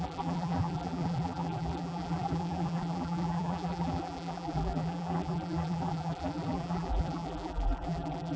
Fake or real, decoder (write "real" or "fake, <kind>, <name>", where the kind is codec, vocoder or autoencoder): fake, vocoder, BigVGAN v2